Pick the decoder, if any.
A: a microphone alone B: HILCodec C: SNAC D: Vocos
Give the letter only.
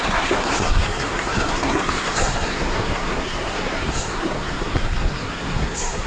C